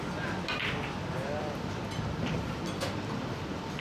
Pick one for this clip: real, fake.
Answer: real